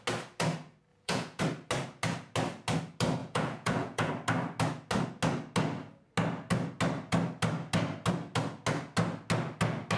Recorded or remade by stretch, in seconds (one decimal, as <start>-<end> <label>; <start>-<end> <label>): 0.0-0.9 recorded; 0.9-1.4 remade; 1.4-3.2 recorded; 3.2-4.1 remade; 4.1-10.0 recorded